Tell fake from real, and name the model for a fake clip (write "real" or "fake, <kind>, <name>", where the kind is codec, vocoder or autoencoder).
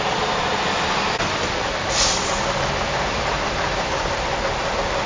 fake, vocoder, BigVGAN v2